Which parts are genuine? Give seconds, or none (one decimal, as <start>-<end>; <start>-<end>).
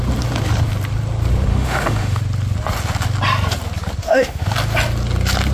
0.0-1.5; 2.2-4.0; 4.5-5.5